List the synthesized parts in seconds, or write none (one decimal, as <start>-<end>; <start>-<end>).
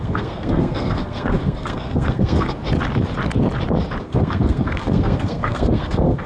0.0-2.6; 4.0-6.3